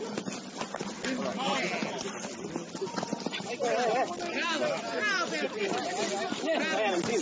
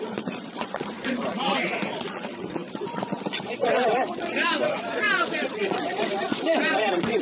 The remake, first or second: second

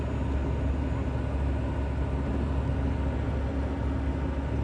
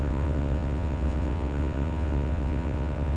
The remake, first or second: second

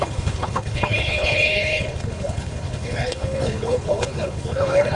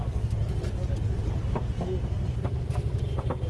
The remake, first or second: first